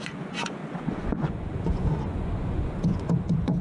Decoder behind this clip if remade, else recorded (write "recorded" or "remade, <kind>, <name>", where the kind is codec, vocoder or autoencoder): remade, vocoder, Vocos